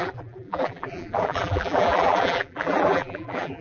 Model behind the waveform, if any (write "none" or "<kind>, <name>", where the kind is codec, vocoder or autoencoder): vocoder, BigVGAN v2